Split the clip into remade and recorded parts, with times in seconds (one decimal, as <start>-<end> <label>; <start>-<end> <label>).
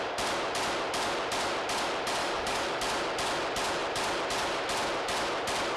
0.0-2.2 recorded; 2.2-2.8 remade; 2.8-5.8 recorded